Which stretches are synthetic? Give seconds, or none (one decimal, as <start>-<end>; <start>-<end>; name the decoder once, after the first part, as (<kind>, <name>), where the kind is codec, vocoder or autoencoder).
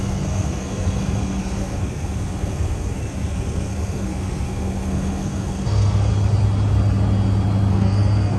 0.0-6.1 (codec, SNAC); 7.7-8.4